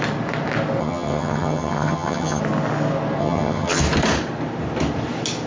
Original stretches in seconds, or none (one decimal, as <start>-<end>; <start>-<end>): 0.0-0.8; 2.4-3.2; 3.8-5.5